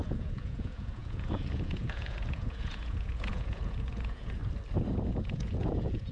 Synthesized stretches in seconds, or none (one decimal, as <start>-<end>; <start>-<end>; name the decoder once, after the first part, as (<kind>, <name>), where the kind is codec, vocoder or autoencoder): 0.0-4.4 (vocoder, Vocos); 5.0-6.1